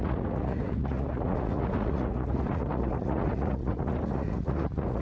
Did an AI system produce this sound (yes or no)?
yes